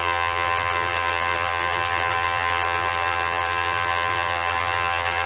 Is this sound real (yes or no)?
no